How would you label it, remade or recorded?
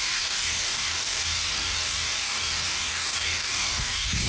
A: remade